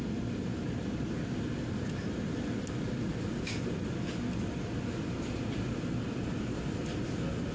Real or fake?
real